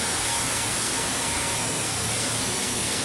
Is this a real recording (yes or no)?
no